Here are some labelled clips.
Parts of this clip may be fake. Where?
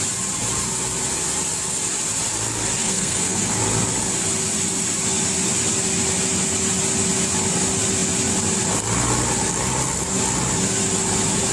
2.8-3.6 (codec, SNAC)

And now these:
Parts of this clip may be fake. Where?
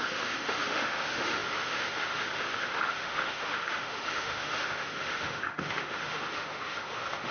0.0-7.3 (autoencoder, DAC-VAE)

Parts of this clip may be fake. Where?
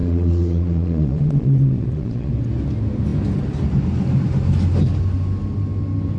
0.0-2.3 (vocoder, Vocos)